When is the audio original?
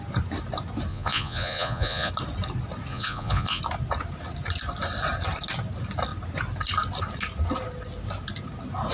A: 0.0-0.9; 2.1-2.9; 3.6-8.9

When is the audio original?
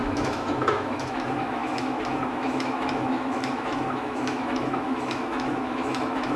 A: none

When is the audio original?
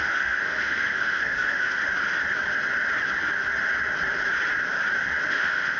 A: 1.8-5.3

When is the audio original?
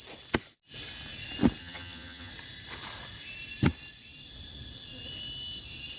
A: 0.0-1.6; 2.3-6.0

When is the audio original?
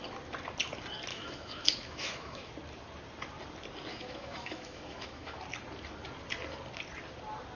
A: 0.0-1.1; 2.5-3.9; 5.4-7.6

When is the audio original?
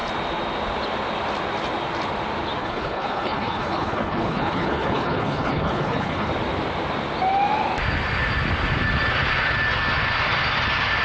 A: 0.0-2.6; 6.3-11.0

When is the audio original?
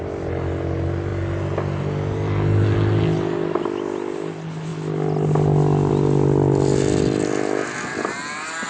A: 0.0-8.7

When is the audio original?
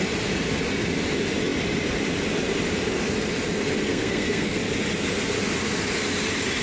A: 0.0-3.9; 4.6-6.6